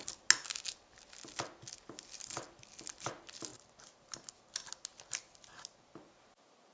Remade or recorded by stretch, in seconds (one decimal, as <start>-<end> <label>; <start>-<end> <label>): 0.0-6.7 recorded